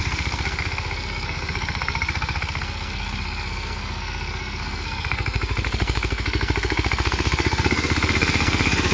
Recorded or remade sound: remade